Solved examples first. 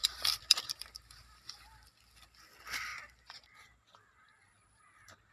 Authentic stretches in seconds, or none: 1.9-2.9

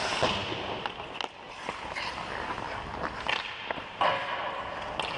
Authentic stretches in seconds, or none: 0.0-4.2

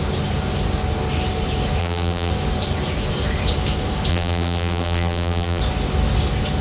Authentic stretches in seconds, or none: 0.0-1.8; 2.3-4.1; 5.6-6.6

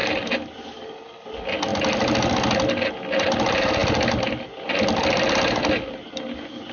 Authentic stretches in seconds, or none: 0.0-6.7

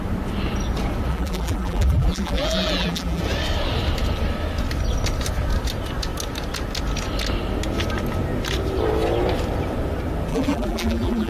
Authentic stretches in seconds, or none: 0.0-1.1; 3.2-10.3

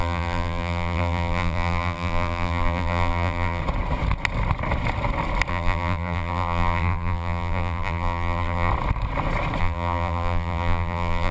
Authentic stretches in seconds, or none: 3.6-5.5; 8.7-9.6

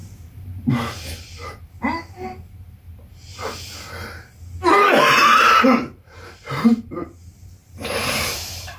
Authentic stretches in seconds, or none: 1.4-5.6

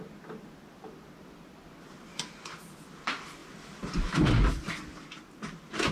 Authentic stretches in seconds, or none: 0.0-3.4; 4.3-5.9